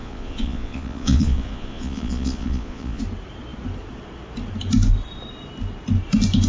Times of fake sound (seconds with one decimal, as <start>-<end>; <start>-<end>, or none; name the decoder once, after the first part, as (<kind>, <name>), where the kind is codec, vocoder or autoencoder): 0.0-3.0 (vocoder, Vocos)